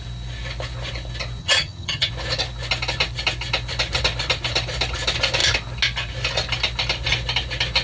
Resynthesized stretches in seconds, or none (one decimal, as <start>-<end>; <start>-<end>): 1.4-2.1